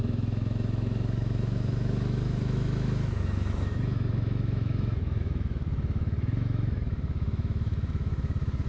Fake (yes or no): yes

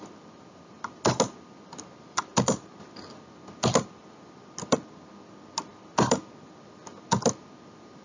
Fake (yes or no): no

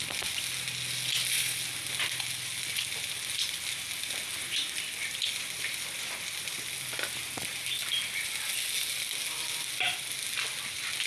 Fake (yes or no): no